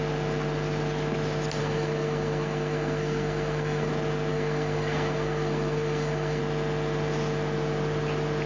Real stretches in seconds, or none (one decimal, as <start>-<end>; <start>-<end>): 0.0-1.6; 3.9-4.3; 6.4-8.5